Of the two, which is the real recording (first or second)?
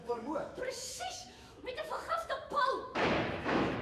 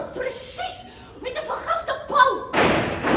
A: second